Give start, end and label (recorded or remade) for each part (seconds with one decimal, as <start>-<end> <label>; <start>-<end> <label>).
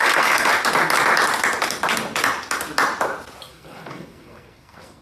0.0-0.5 remade; 0.5-3.5 recorded; 3.5-5.0 remade